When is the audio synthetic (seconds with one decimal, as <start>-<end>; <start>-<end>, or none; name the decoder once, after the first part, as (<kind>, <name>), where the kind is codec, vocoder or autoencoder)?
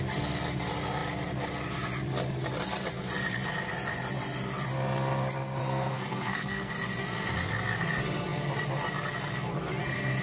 5.6-6.7 (codec, SNAC)